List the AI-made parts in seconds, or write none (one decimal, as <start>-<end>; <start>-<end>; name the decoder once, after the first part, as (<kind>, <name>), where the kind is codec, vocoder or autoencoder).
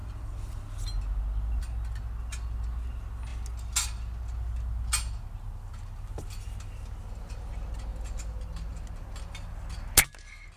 none